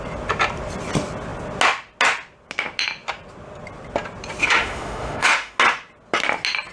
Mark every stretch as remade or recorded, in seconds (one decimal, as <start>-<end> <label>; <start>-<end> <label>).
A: 0.0-4.4 recorded; 4.4-5.6 remade; 5.6-6.7 recorded